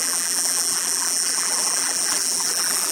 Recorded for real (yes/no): no